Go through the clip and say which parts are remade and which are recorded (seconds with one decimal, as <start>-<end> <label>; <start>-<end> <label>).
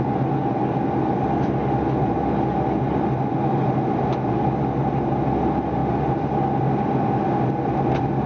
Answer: 0.0-8.3 recorded